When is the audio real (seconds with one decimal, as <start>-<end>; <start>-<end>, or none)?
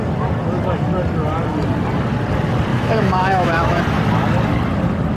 0.0-2.7; 3.8-5.2